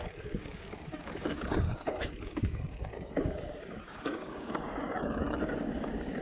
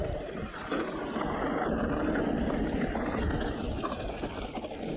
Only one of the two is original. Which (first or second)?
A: second